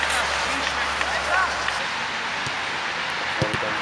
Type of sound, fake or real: real